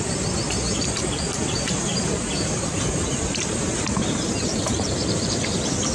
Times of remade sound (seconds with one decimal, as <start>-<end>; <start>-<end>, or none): 1.9-5.4